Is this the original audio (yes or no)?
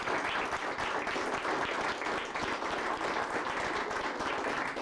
yes